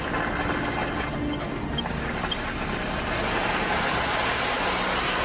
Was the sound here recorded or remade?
recorded